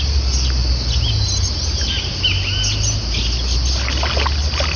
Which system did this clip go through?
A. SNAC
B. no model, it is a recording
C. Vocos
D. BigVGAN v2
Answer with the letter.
B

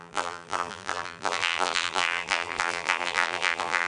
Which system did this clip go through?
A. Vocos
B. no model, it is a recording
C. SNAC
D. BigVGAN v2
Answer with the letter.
D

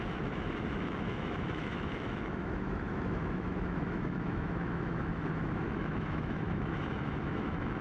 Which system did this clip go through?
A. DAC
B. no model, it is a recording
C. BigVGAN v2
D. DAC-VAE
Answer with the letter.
D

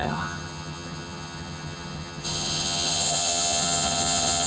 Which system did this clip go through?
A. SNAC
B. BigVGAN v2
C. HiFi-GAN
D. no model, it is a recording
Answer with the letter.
C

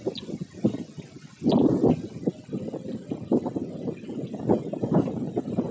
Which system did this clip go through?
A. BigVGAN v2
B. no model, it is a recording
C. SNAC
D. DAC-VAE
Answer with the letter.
B